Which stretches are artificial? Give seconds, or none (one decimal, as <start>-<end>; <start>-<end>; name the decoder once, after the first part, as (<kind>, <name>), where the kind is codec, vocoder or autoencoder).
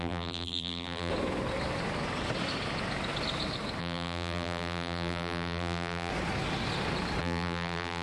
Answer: 0.0-1.1 (vocoder, BigVGAN v2); 3.8-6.1; 7.2-8.0